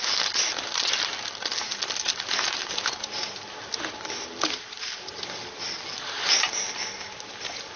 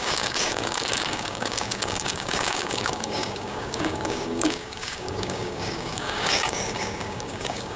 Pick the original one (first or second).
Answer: first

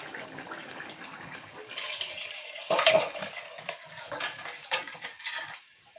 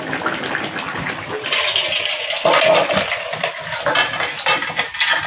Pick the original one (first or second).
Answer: second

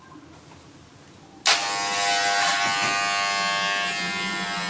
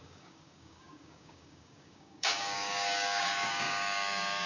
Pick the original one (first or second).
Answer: first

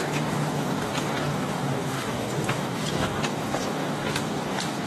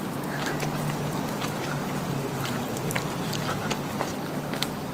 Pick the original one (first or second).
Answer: second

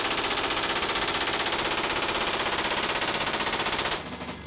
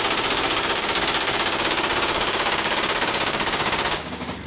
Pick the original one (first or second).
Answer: first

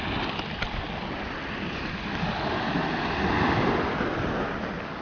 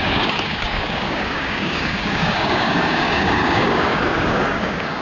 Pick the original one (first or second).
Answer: first